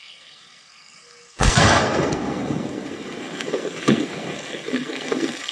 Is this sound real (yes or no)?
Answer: no